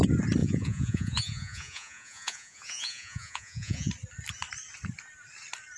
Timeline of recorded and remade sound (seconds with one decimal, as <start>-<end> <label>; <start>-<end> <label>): 0.0-0.4 recorded; 0.4-3.9 remade; 3.9-5.8 recorded